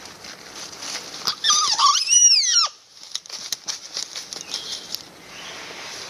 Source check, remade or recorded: recorded